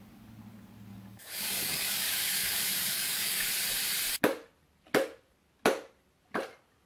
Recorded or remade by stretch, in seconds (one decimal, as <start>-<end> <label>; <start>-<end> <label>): 0.0-0.9 recorded; 0.9-3.5 remade; 3.5-6.9 recorded